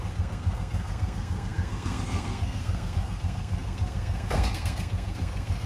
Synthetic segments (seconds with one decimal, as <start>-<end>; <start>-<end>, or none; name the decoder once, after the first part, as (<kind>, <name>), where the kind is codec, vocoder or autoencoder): 0.0-5.7 (codec, SNAC)